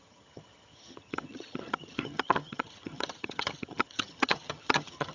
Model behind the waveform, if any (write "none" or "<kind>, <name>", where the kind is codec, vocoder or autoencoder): vocoder, HiFi-GAN